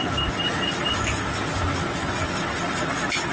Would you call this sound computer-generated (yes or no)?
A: no